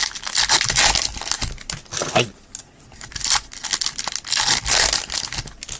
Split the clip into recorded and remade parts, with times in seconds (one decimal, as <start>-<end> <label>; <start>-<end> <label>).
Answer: 0.0-5.8 recorded